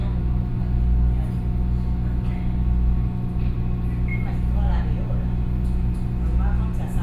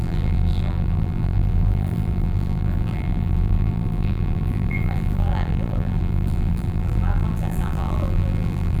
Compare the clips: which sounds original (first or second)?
first